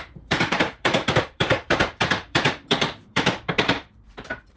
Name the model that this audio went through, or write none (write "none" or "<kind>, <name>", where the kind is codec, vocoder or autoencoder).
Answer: vocoder, BigVGAN v2